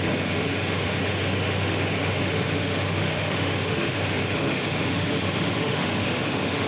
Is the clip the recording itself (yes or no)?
no